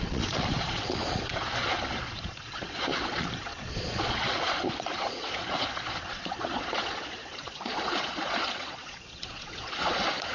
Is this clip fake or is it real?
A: fake